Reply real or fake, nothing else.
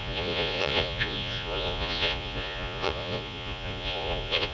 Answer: fake